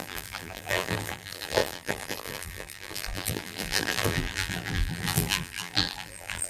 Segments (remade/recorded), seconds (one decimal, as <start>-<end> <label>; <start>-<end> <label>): 0.0-6.5 remade